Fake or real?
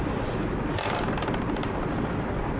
real